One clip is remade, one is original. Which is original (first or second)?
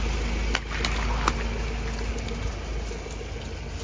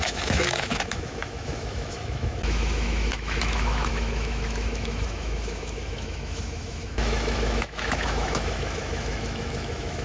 first